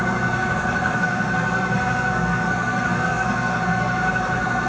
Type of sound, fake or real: fake